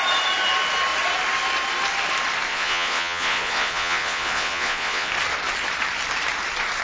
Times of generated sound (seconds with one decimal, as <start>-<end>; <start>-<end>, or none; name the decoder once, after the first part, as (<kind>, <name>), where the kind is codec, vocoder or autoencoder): 2.5-5.1 (vocoder, Vocos)